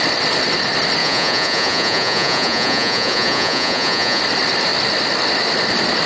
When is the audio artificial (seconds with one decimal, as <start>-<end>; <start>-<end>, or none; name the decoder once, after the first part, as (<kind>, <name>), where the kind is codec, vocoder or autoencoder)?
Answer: 1.0-4.2 (vocoder, Vocos)